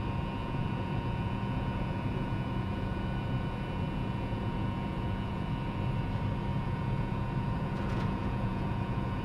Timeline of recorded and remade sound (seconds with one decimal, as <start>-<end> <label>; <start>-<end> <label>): 0.0-0.4 recorded; 0.4-5.5 remade; 5.5-6.5 recorded; 6.5-9.2 remade